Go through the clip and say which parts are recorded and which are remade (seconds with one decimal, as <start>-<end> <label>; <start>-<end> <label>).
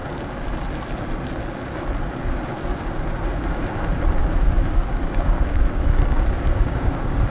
0.0-4.2 recorded; 4.2-7.3 remade